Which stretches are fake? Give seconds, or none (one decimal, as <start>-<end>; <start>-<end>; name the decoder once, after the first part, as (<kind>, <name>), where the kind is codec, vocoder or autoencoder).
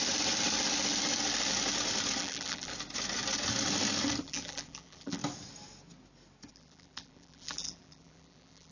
2.2-2.7 (vocoder, BigVGAN v2); 4.2-5.2; 6.5-8.7